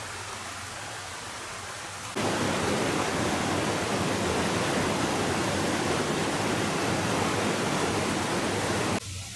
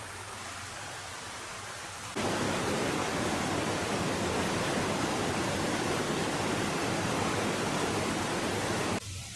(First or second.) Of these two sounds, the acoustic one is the first